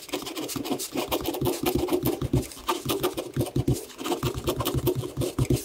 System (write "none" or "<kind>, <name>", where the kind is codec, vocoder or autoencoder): none